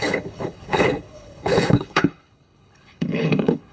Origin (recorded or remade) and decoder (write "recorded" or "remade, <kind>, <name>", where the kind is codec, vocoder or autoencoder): remade, codec, HILCodec